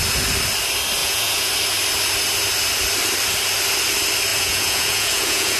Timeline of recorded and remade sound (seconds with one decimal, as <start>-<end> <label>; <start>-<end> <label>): 0.0-1.0 recorded; 1.0-1.5 remade; 1.5-4.3 recorded; 4.3-5.6 remade